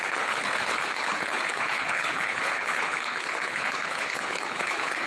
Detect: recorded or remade remade